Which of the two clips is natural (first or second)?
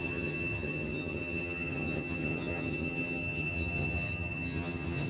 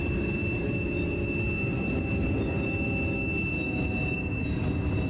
second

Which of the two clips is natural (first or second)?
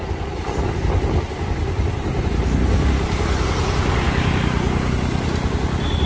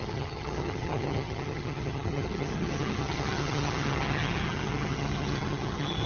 first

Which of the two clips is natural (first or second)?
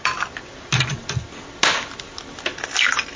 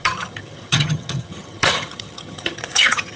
first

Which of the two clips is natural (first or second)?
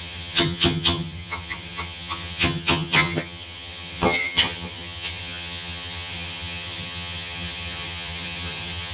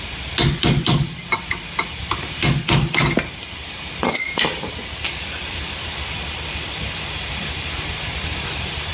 second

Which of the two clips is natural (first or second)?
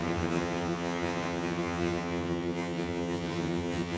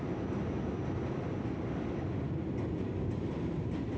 second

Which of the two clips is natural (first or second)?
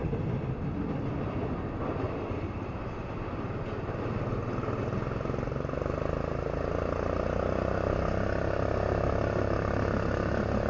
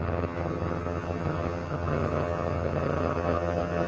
first